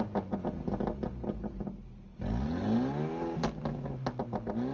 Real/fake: real